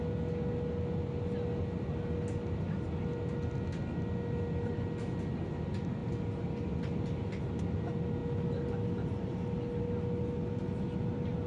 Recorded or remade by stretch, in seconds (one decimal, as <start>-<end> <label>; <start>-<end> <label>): 0.0-11.5 recorded